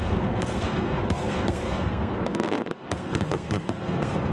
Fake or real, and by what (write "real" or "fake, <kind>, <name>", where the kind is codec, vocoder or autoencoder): fake, codec, SNAC